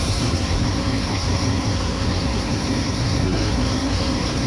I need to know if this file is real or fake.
fake